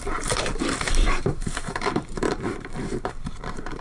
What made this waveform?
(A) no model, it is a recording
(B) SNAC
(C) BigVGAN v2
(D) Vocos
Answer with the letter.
C